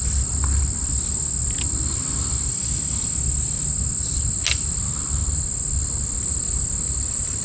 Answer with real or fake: real